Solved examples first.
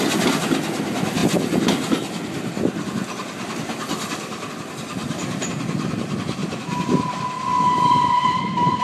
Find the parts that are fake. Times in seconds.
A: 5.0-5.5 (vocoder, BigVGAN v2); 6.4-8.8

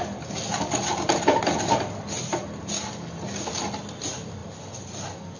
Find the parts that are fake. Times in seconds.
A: none

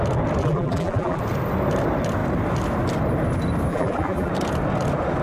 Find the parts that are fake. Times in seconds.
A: 0.4-1.2 (vocoder, BigVGAN v2); 3.7-4.3

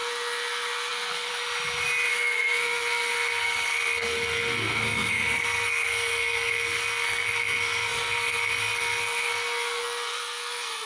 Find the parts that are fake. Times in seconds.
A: 0.0-1.3 (codec, SNAC); 2.1-10.9

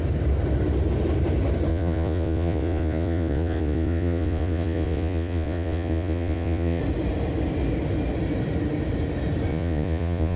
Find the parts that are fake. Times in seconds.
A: 1.7-6.8 (vocoder, Vocos); 9.5-10.4